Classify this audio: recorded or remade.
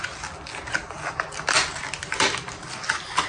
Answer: recorded